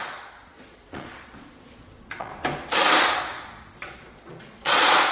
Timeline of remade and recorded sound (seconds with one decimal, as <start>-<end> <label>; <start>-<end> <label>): 0.0-2.3 remade; 2.3-3.0 recorded; 3.0-5.1 remade